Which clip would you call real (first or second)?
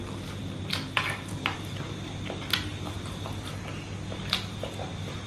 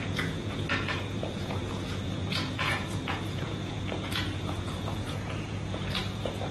first